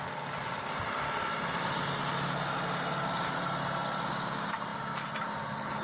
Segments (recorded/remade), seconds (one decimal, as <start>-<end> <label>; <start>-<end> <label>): 0.0-5.8 recorded